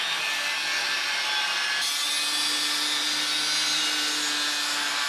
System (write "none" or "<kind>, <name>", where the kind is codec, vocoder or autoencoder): none